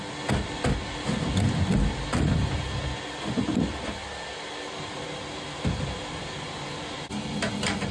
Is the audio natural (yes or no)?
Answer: yes